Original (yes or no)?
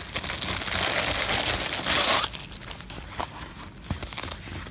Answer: yes